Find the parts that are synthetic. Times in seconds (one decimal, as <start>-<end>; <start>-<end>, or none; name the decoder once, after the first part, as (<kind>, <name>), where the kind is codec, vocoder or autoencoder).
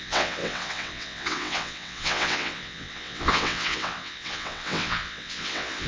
0.0-5.9 (vocoder, WaveNeXt)